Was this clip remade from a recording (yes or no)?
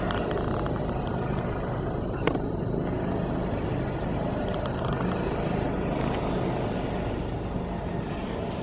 no